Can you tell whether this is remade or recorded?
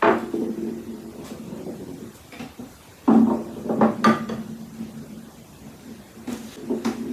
recorded